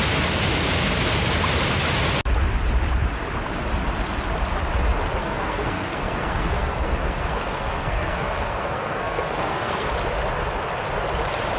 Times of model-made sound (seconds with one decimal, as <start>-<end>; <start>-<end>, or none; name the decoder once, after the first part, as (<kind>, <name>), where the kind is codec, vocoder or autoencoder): 5.2-9.9 (codec, SNAC)